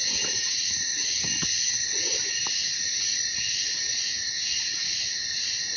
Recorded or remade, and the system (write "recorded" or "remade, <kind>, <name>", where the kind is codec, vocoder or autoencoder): recorded